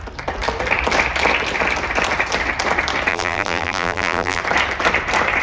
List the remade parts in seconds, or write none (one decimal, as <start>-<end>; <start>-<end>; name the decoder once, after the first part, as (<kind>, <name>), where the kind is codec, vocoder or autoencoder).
3.1-4.4 (vocoder, BigVGAN v2)